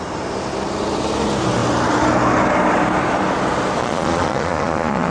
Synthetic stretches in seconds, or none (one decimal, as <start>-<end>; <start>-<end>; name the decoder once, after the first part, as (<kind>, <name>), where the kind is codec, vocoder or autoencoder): 3.8-5.1 (vocoder, Vocos)